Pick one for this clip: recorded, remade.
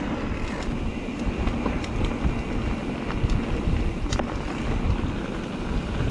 recorded